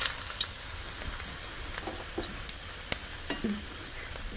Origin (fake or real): real